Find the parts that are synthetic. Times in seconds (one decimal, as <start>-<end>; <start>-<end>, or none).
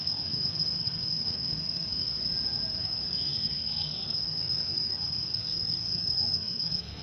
0.0-2.2; 2.8-7.0